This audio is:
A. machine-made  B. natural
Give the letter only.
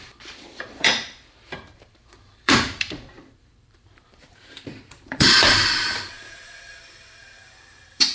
A